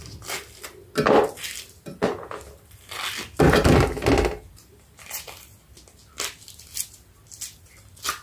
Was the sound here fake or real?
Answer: real